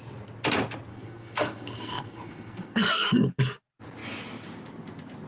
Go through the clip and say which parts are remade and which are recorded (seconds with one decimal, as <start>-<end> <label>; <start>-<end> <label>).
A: 0.0-0.9 recorded; 0.9-3.4 remade; 3.4-5.3 recorded